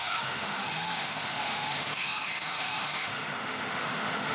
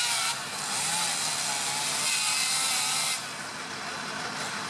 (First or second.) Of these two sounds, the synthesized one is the first